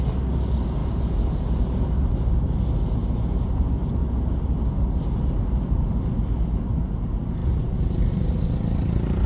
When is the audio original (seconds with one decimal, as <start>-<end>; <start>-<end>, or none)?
0.0-3.0; 3.6-7.4; 8.3-9.3